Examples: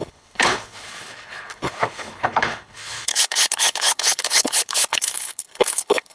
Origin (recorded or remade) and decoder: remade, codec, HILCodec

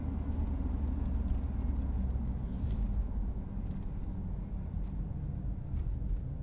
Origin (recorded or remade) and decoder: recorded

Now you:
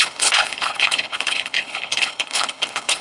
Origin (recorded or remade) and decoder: remade, codec, HILCodec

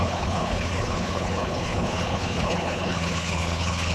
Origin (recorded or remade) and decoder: remade, codec, HILCodec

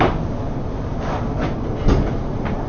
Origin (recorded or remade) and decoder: recorded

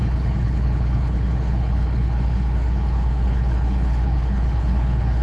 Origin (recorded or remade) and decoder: remade, codec, HILCodec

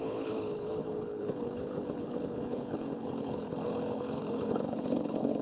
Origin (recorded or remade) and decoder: remade, codec, HILCodec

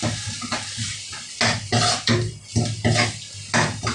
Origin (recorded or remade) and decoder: recorded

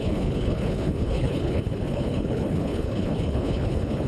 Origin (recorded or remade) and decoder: remade, codec, HILCodec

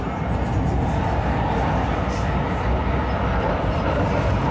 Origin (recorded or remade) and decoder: recorded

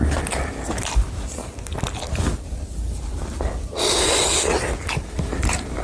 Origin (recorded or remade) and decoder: recorded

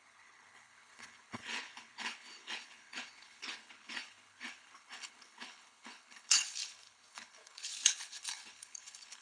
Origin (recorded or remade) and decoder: remade, codec, HILCodec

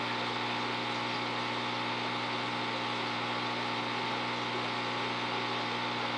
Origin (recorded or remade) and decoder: recorded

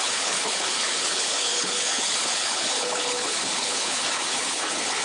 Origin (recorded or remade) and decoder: remade, codec, HILCodec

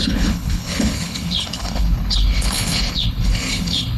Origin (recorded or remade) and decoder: remade, codec, HILCodec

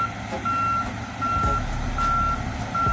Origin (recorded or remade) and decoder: recorded